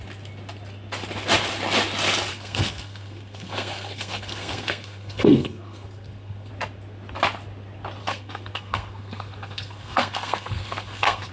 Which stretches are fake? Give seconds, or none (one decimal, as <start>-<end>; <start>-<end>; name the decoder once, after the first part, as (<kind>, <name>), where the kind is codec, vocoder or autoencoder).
2.3-6.5 (codec, SNAC); 8.0-11.3